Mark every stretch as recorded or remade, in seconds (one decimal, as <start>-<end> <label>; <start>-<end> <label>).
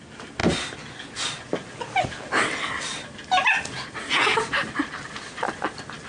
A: 0.0-6.1 recorded